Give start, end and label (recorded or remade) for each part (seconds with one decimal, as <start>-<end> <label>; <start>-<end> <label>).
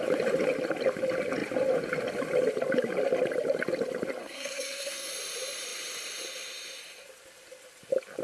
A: 0.0-4.2 recorded; 4.2-5.1 remade; 5.1-8.2 recorded